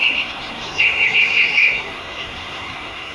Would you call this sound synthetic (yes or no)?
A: yes